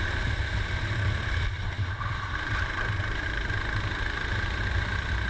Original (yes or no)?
no